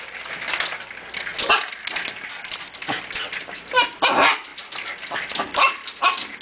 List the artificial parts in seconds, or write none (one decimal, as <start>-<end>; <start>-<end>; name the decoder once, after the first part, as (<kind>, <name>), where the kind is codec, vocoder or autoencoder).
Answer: none